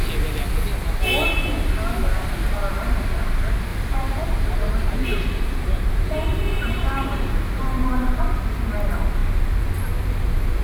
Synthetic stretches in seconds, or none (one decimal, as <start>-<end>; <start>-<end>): 3.7-8.2